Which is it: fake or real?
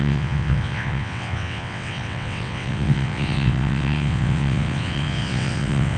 fake